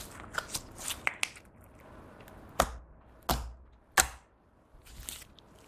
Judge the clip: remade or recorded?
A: recorded